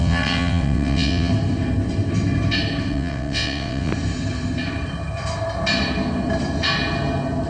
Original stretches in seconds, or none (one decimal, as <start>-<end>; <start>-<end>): 1.3-2.9; 3.9-7.5